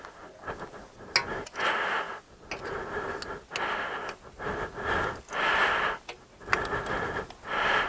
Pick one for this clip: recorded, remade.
recorded